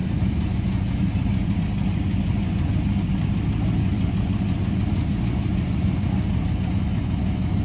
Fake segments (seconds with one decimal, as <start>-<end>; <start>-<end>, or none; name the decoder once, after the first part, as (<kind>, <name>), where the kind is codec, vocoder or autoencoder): 0.0-1.6 (vocoder, Vocos); 2.1-2.7; 3.8-7.6